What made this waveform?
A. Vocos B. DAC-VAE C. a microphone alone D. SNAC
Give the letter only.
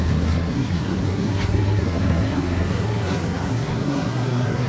D